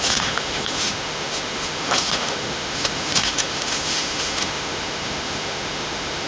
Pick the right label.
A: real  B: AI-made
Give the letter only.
B